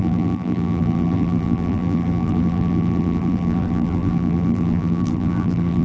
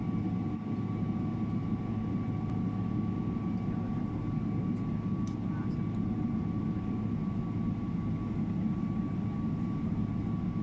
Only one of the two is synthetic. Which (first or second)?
first